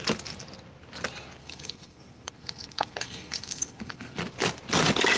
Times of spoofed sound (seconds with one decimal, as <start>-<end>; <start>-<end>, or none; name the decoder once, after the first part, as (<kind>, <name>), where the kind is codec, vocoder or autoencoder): 1.4-4.2 (codec, SNAC)